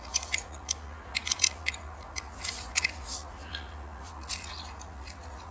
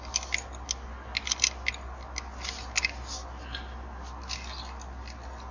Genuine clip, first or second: second